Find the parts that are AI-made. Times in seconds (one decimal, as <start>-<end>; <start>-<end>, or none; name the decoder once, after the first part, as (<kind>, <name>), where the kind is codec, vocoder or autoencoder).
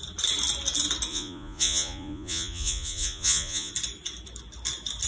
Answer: 1.1-3.7 (vocoder, Vocos)